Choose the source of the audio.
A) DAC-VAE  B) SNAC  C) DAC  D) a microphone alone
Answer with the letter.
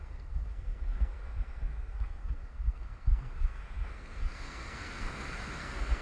B